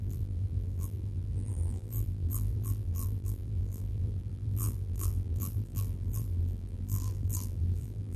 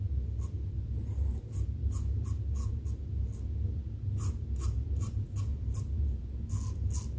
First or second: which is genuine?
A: second